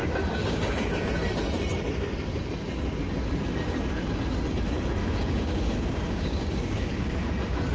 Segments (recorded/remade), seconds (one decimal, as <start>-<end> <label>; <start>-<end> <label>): 0.0-1.1 remade; 1.1-5.0 recorded; 5.0-7.3 remade; 7.3-7.7 recorded